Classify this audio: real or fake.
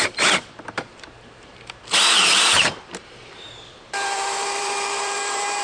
fake